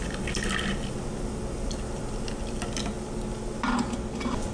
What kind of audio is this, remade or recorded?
recorded